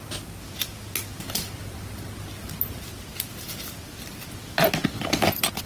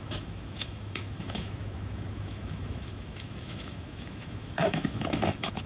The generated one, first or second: second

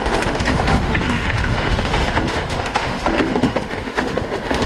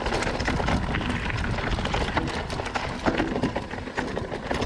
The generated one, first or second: first